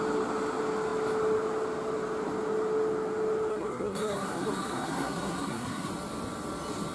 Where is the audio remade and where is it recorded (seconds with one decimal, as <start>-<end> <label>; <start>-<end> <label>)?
0.0-3.5 recorded; 3.5-5.9 remade; 5.9-6.9 recorded